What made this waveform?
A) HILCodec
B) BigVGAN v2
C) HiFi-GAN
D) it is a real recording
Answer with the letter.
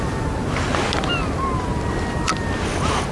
D